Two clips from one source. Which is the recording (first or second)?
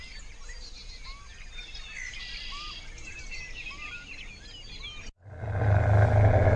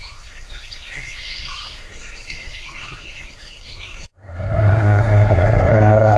first